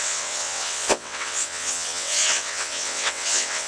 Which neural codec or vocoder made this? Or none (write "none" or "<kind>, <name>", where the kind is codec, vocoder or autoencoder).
vocoder, WaveNeXt